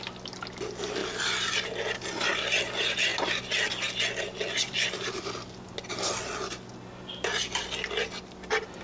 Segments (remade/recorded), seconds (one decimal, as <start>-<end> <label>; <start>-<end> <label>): 0.0-1.0 recorded; 1.0-1.7 remade; 1.7-8.8 recorded

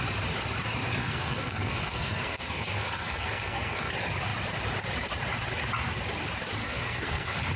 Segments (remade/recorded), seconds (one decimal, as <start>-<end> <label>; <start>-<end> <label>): 0.0-1.0 recorded; 1.0-3.9 remade; 3.9-6.6 recorded; 6.6-7.6 remade

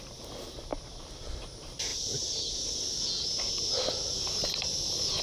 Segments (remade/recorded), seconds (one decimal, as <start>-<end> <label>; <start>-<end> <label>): 0.0-0.7 remade; 0.7-1.2 recorded; 1.2-1.9 remade; 1.9-5.2 recorded

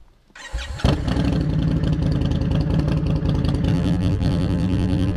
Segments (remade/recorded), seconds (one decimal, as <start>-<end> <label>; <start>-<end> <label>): 0.0-3.7 recorded; 3.7-5.2 remade

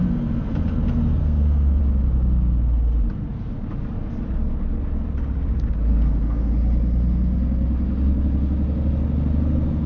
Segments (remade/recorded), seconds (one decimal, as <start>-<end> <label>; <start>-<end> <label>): 0.0-1.2 recorded; 1.2-1.8 remade; 1.8-5.9 recorded; 5.9-6.5 remade; 6.5-9.9 recorded

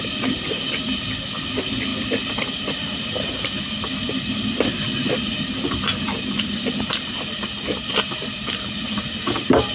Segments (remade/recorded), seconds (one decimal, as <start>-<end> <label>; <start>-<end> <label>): 0.0-9.7 recorded